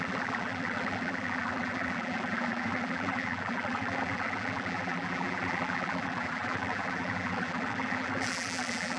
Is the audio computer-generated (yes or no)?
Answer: yes